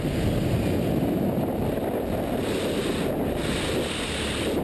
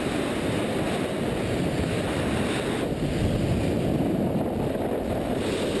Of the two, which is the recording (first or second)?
first